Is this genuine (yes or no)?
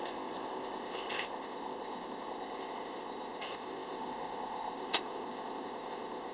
no